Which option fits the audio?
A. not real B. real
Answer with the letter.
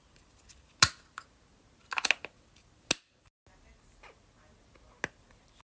B